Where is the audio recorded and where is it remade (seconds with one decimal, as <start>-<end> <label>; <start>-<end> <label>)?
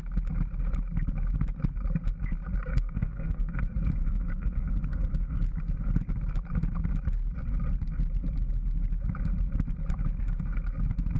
0.0-2.7 recorded; 2.7-3.6 remade; 3.6-4.0 recorded; 4.0-4.7 remade; 4.7-11.2 recorded